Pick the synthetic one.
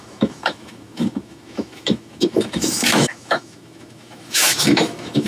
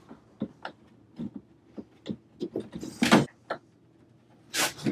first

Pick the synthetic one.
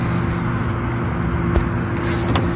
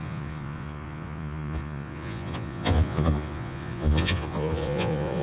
second